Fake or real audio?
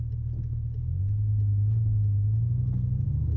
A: real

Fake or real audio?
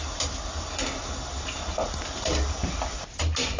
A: real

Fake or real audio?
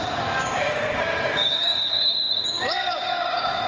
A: fake